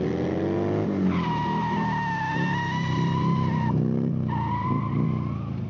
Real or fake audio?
real